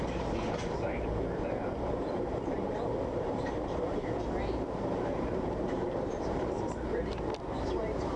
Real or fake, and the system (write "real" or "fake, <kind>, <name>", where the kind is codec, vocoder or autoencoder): fake, vocoder, BigVGAN v2